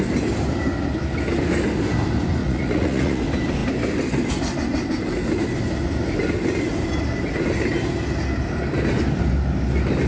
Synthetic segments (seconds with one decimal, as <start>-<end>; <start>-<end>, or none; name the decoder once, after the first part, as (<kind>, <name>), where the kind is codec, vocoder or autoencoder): 2.4-3.2 (vocoder, Vocos)